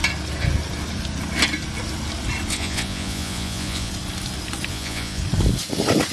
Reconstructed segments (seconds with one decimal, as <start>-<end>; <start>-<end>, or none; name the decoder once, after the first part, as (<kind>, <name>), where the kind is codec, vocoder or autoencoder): 2.5-3.9 (vocoder, Vocos); 4.7-5.2